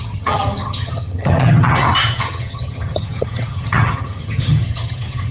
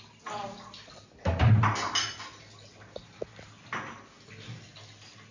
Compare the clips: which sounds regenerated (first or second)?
first